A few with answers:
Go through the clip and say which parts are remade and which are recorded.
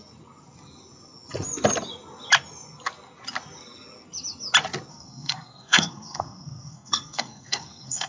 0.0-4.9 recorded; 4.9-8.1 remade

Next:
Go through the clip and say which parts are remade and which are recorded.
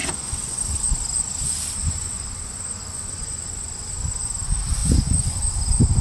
0.0-0.6 remade; 0.6-1.8 recorded; 1.8-3.9 remade; 3.9-4.8 recorded; 4.8-5.5 remade; 5.5-6.0 recorded